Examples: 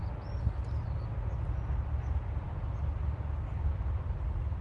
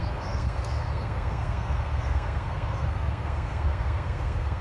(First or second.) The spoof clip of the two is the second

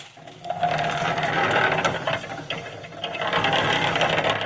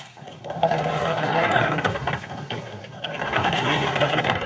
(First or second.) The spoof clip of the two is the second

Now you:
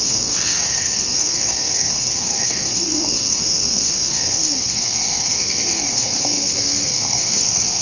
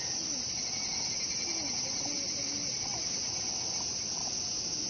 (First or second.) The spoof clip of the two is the first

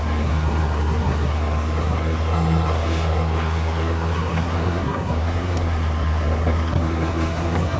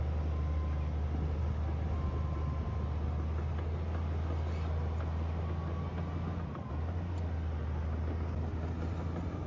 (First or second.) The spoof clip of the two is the first